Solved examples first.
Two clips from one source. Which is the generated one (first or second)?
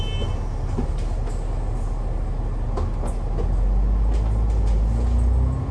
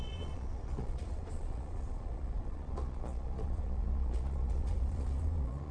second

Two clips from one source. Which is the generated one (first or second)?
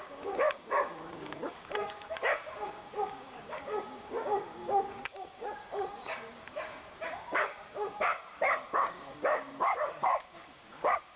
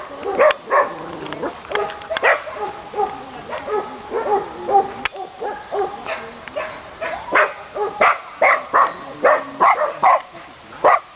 first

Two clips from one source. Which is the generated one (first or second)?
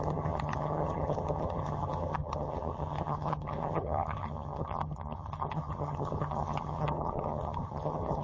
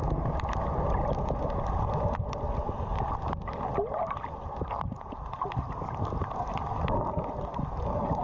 first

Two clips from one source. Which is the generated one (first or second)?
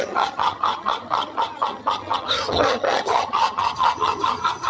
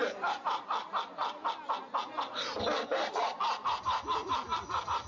first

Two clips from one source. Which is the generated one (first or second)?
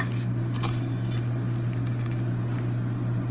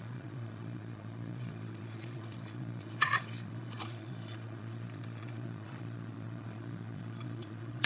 second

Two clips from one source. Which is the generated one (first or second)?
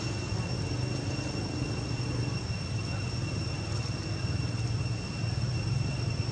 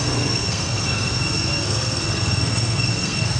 second